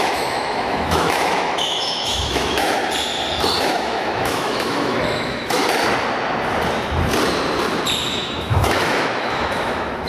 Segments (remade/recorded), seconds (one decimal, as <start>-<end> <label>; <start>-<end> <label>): 0.0-2.8 remade; 2.8-3.6 recorded; 3.6-5.6 remade; 5.6-8.1 recorded; 8.1-10.1 remade